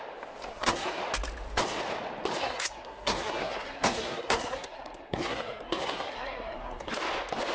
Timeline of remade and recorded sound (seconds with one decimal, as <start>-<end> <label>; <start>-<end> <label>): 0.0-0.5 recorded; 0.5-1.0 remade; 1.0-2.4 recorded; 2.4-6.9 remade; 6.9-7.5 recorded